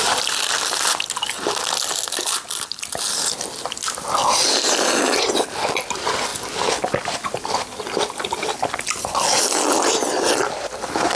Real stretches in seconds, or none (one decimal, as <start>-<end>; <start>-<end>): 0.0-11.2